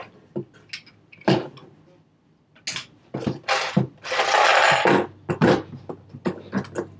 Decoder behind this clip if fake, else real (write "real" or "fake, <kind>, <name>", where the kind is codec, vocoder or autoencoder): real